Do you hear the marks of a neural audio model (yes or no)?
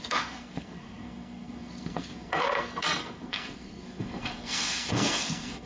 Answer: yes